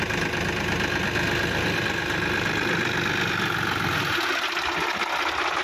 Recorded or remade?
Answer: recorded